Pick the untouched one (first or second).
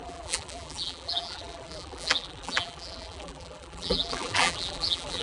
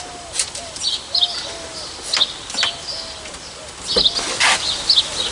second